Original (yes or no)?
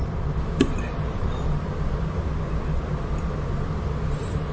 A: yes